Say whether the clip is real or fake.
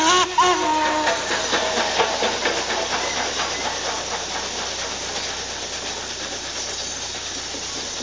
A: real